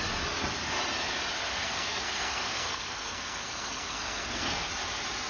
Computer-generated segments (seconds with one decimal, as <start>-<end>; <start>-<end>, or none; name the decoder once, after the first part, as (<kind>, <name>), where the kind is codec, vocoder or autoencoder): 1.5-4.7 (codec, SNAC)